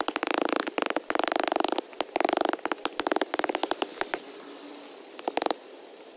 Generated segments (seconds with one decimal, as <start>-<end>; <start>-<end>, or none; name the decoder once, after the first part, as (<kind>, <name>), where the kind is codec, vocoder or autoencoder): none